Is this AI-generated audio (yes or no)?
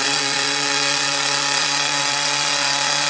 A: yes